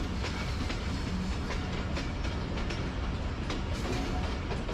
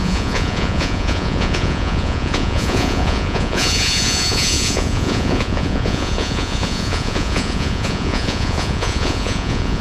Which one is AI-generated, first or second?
second